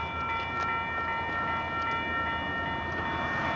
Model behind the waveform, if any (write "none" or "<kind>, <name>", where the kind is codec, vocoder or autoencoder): none